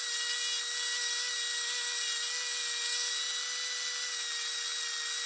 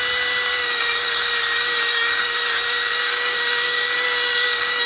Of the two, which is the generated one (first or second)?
second